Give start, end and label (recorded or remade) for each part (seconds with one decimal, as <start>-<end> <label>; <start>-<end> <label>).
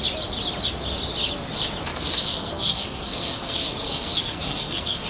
0.0-1.9 recorded; 1.9-5.1 remade